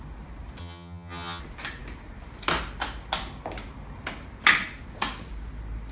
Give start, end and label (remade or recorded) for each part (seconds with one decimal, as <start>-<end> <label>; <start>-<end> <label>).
0.0-0.6 recorded; 0.6-1.4 remade; 1.4-5.9 recorded